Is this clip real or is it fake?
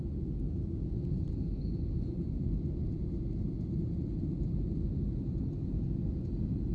real